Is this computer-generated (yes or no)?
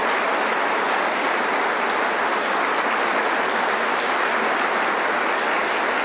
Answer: no